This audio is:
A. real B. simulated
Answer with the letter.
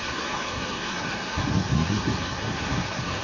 B